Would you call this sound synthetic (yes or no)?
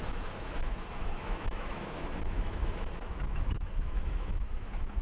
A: yes